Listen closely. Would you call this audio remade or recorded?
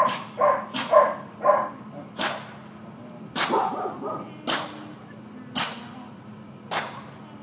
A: recorded